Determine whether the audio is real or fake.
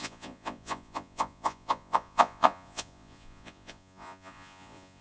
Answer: fake